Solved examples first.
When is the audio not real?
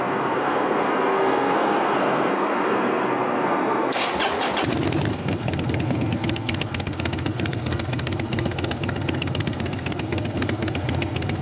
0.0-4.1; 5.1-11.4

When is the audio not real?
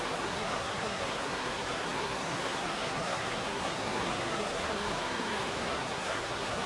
0.0-6.7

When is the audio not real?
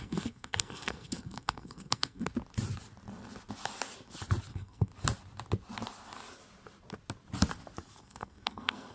0.0-2.3; 4.5-4.9; 8.0-8.9